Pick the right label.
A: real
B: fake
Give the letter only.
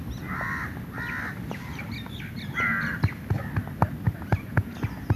A